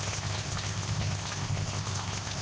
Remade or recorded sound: remade